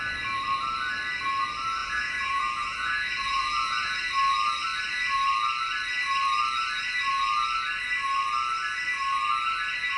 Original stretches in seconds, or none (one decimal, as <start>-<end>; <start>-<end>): 0.0-1.8; 4.0-10.0